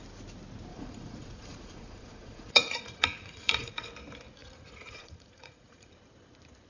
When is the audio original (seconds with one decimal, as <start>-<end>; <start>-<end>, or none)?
0.0-0.7; 3.7-4.4; 5.9-6.7